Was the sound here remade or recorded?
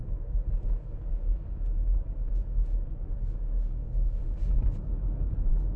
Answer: remade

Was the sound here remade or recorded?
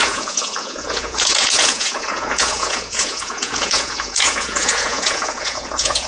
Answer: remade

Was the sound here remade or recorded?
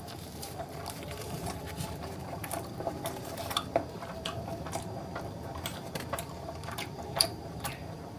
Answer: remade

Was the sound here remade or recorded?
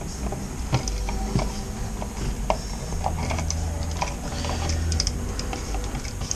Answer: recorded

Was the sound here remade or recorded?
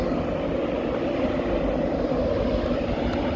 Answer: recorded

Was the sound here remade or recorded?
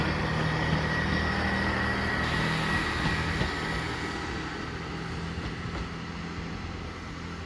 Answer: recorded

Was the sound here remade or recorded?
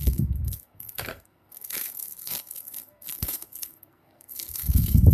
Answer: remade